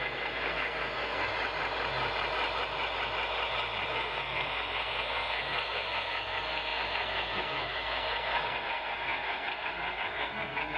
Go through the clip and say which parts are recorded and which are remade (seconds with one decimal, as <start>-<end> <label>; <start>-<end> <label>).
0.0-1.3 remade; 1.3-3.9 recorded; 3.9-10.8 remade